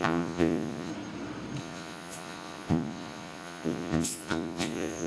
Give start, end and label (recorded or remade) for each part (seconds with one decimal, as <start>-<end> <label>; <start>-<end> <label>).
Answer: 0.0-0.9 remade; 0.9-1.6 recorded; 1.6-5.1 remade